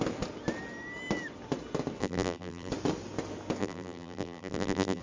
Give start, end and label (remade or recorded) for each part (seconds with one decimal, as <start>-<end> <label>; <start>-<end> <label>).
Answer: 0.0-2.0 recorded; 2.0-2.7 remade; 2.7-3.6 recorded; 3.6-5.0 remade